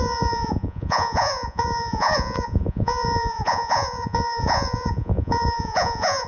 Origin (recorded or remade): remade